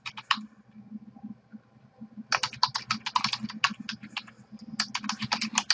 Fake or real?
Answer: real